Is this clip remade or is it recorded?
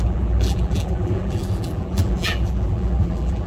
remade